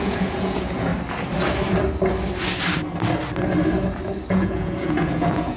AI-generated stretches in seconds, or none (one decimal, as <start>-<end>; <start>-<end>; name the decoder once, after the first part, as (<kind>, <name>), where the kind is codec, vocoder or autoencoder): 0.0-0.9 (vocoder, Vocos); 4.3-5.6